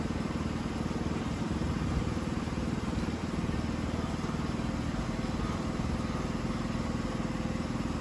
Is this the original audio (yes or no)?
yes